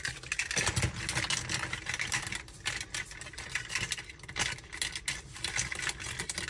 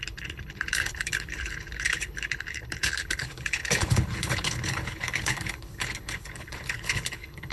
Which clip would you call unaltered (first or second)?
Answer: first